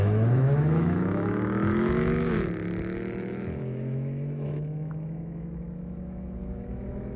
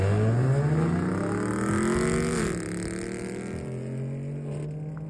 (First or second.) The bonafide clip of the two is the second